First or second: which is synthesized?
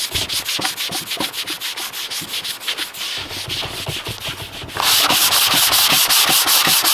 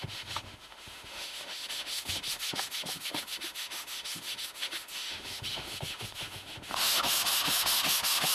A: second